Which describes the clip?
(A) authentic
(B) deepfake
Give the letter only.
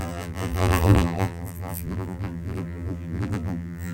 B